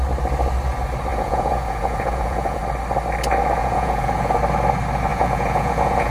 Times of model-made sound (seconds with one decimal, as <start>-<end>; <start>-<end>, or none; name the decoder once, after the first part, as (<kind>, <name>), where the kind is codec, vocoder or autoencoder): 1.1-2.6 (vocoder, Vocos); 3.6-4.4; 5.1-6.1